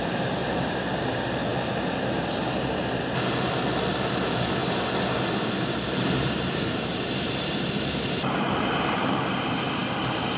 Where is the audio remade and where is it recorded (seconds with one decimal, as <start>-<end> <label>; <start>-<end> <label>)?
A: 0.0-0.4 recorded; 0.4-1.0 remade; 1.0-4.6 recorded; 4.6-9.2 remade; 9.2-10.4 recorded